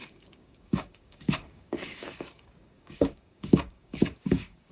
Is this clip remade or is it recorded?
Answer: remade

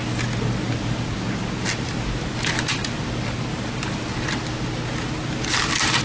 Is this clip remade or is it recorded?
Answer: recorded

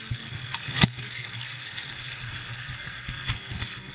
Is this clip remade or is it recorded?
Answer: remade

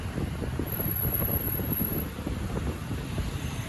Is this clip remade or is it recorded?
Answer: remade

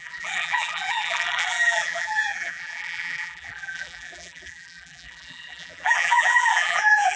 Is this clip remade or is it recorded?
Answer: remade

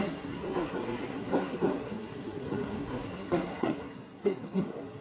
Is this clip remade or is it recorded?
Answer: remade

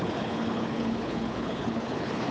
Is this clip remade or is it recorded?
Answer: remade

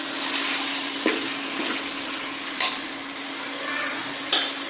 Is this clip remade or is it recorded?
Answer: recorded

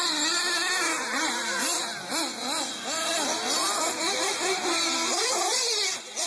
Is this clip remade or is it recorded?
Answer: recorded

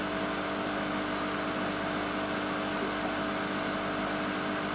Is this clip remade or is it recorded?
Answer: recorded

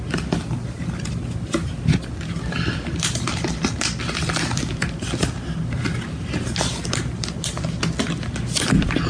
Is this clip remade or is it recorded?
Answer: recorded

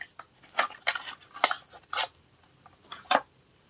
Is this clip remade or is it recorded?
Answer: remade